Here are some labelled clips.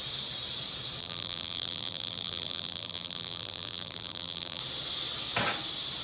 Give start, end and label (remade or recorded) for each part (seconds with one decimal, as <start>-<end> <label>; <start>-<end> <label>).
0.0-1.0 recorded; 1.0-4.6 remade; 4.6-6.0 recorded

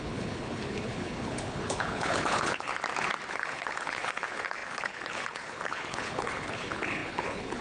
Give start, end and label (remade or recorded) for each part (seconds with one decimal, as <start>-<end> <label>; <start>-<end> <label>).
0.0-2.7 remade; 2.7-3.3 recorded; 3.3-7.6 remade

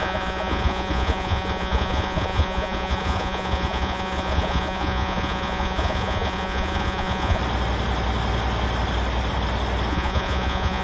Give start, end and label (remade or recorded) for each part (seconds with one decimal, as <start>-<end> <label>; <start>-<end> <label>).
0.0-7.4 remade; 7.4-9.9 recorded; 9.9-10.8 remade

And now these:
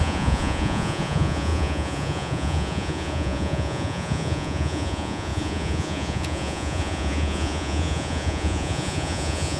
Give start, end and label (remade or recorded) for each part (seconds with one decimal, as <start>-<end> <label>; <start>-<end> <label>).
0.0-9.6 remade

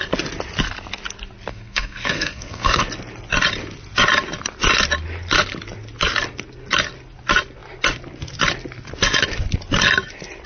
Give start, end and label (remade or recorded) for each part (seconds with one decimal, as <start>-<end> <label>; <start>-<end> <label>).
0.0-1.5 recorded; 1.5-2.8 remade; 2.8-10.5 recorded

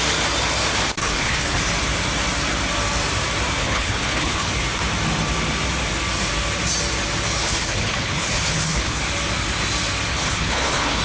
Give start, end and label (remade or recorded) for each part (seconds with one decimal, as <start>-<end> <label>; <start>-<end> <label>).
0.0-1.0 recorded; 1.0-1.6 remade; 1.6-3.6 recorded; 3.6-4.5 remade; 4.5-7.4 recorded; 7.4-9.0 remade; 9.0-10.1 recorded; 10.1-11.0 remade